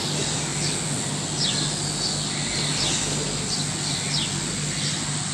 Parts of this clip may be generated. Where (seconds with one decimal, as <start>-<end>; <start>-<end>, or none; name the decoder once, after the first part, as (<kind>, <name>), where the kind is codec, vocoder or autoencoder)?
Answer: none